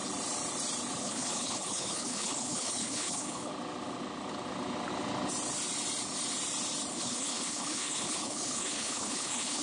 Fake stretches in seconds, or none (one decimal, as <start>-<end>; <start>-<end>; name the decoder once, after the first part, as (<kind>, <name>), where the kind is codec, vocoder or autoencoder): 1.0-3.5 (codec, HILCodec); 6.9-9.6